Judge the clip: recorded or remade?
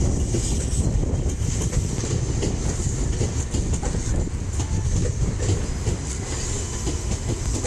recorded